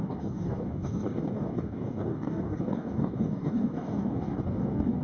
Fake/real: fake